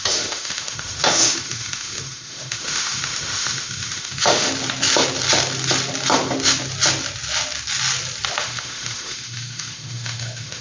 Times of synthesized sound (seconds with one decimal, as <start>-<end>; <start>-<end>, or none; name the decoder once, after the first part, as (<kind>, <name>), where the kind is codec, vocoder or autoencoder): 0.0-4.5 (autoencoder, DAC-VAE); 8.4-10.6